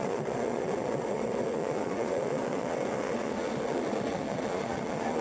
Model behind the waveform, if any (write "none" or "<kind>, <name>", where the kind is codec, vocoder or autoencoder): vocoder, Vocos